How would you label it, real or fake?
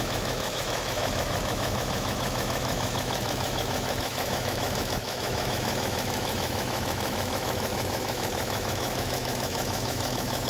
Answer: fake